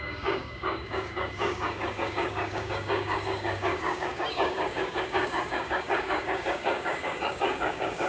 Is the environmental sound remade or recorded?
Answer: remade